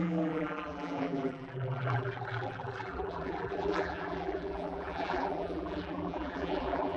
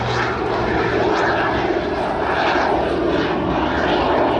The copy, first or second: first